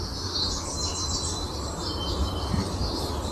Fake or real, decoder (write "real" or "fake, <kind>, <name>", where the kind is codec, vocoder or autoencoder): fake, vocoder, BigVGAN v2